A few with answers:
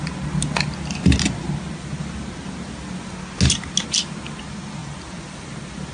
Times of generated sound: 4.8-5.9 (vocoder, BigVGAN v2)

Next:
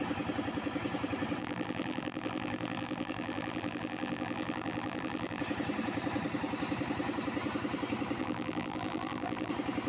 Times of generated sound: 1.4-5.4 (vocoder, BigVGAN v2); 8.2-9.5

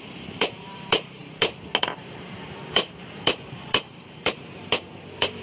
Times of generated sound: 0.0-1.2 (vocoder, BigVGAN v2); 1.8-5.4

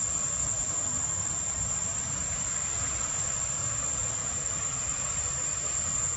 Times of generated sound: 1.2-3.4 (vocoder, BigVGAN v2); 4.2-6.2

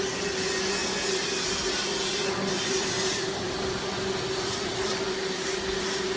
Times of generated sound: 2.2-5.0 (vocoder, BigVGAN v2)

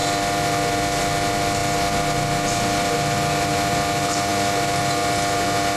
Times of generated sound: none

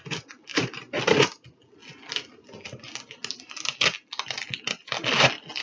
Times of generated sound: 0.5-1.0 (vocoder, BigVGAN v2)

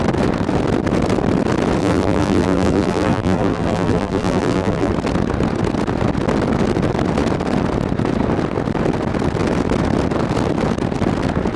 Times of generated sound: 1.8-4.9 (vocoder, BigVGAN v2)